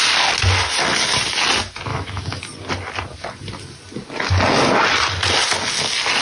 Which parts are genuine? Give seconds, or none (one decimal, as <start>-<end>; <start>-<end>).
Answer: 0.0-1.9; 2.4-6.2